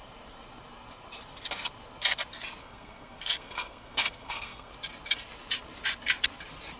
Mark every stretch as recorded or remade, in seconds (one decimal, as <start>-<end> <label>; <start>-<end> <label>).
0.0-2.6 recorded; 2.6-4.7 remade; 4.7-6.8 recorded